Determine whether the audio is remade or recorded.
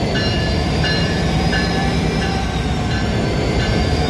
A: remade